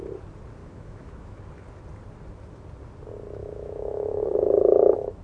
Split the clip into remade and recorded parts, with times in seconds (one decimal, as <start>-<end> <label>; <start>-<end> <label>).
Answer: 0.0-0.6 recorded; 0.6-1.4 remade; 1.4-3.4 recorded; 3.4-5.2 remade